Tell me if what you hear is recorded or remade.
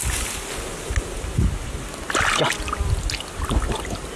recorded